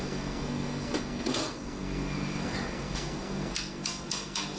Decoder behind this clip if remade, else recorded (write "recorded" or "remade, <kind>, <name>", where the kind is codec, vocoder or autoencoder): remade, codec, SNAC